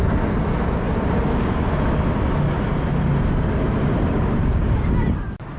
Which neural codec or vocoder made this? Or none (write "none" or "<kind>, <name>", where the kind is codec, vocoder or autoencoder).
none